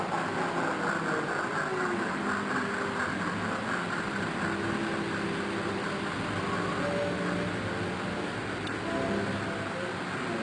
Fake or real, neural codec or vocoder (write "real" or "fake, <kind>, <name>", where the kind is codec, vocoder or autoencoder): real